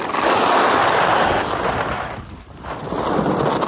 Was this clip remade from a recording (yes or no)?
no